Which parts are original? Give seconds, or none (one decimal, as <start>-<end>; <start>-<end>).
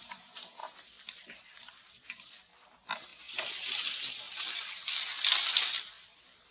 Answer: 3.1-5.9